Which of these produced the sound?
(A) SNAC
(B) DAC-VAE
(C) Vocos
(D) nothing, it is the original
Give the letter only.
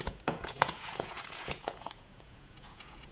C